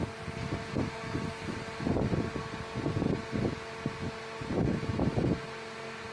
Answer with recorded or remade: recorded